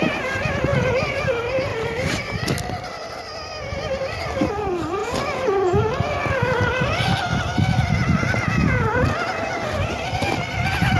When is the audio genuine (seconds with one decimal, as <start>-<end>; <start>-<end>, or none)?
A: 0.0-11.0